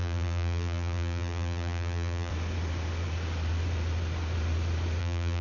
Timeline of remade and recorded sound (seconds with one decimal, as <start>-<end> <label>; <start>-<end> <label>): 0.0-2.3 remade; 2.3-5.0 recorded; 5.0-5.4 remade